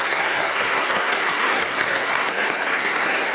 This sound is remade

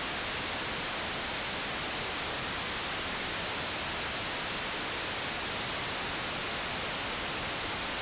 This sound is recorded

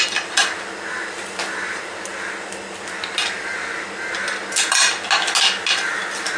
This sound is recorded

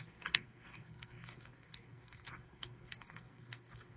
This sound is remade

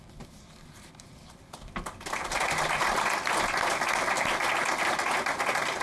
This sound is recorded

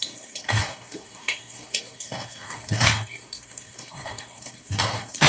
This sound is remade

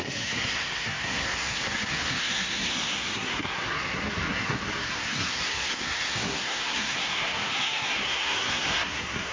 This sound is remade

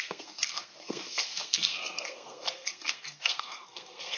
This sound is remade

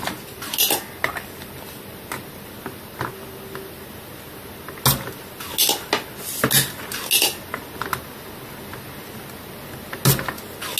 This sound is recorded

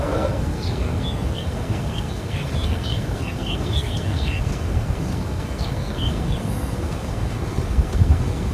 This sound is remade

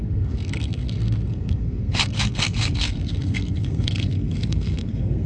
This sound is remade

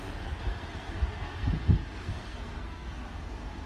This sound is remade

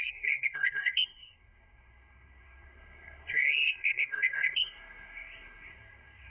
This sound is remade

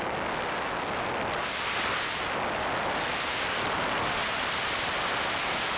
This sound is recorded